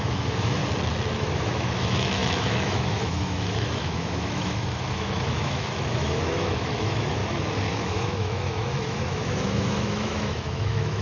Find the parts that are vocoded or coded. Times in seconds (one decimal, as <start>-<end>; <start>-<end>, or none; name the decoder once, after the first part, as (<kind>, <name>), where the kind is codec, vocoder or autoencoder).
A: 0.0-0.6 (autoencoder, DAC-VAE); 1.1-7.2; 7.7-11.0